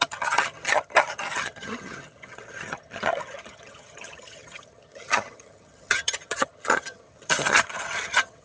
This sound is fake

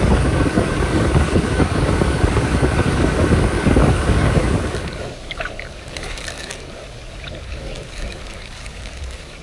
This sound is fake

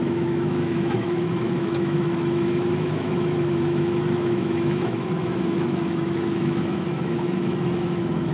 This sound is fake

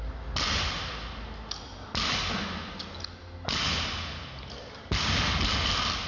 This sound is real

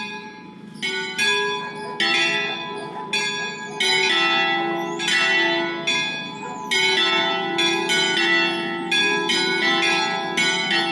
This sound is real